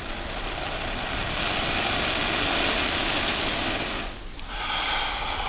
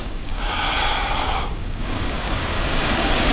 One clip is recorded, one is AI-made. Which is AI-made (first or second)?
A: second